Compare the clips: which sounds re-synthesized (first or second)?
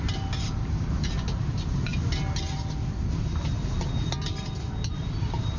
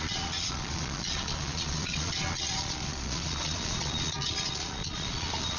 second